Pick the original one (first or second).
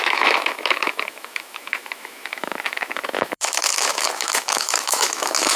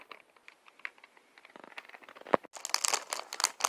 second